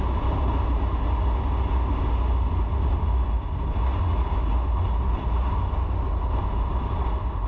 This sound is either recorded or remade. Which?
recorded